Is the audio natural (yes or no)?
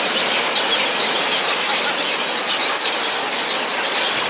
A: yes